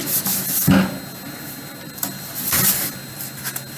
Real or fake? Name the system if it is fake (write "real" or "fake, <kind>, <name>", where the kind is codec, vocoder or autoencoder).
real